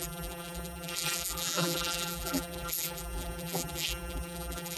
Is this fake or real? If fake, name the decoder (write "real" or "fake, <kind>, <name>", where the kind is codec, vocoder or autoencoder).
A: fake, vocoder, BigVGAN v2